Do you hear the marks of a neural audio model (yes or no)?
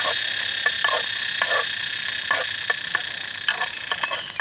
no